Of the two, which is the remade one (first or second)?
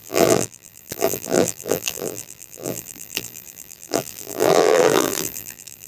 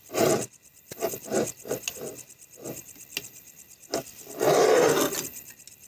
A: first